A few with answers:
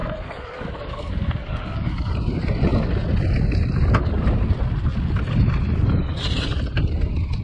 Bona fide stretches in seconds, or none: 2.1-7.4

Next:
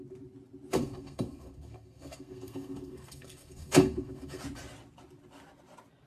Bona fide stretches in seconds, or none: 0.0-0.7; 4.4-6.1

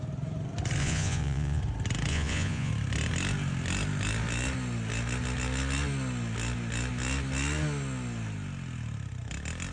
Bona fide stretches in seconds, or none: 0.0-0.8; 1.6-2.1; 2.7-9.7

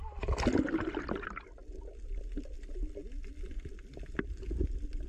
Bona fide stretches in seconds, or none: 0.0-5.1

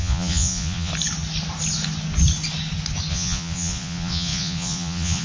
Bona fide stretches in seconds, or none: 0.9-3.1

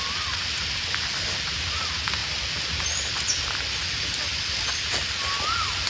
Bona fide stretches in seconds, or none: 0.0-5.9